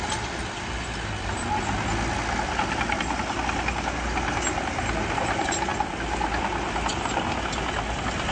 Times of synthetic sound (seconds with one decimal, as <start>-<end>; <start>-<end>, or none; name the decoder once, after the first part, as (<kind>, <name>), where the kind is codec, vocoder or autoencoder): none